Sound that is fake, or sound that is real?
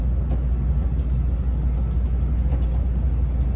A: real